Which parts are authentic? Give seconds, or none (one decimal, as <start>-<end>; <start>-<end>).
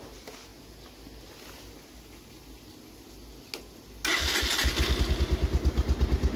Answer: 0.0-6.4